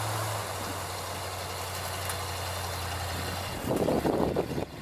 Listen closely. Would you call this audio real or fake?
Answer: real